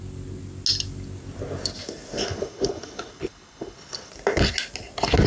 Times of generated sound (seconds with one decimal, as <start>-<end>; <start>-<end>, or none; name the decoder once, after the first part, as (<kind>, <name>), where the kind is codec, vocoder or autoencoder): 2.2-4.1 (codec, HILCodec)